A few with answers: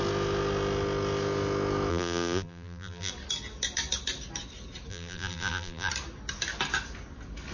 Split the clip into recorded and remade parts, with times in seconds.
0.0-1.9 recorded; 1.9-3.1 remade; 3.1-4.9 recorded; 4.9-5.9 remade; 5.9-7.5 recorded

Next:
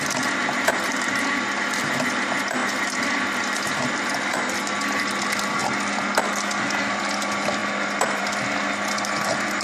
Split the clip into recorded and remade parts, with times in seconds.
0.0-9.6 recorded